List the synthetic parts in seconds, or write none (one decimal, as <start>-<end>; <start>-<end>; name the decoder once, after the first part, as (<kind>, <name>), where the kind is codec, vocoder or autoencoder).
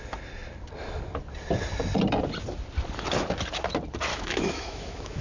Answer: 4.1-5.2 (autoencoder, DAC-VAE)